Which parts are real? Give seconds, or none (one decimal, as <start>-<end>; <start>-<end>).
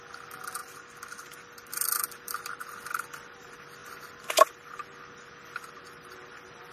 3.8-5.4